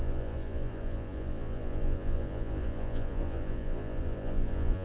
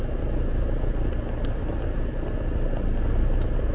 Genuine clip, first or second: second